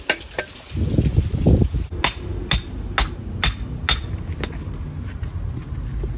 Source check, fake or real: real